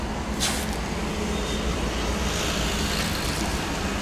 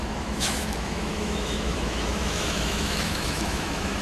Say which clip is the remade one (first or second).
second